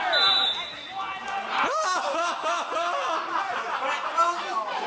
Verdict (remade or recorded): recorded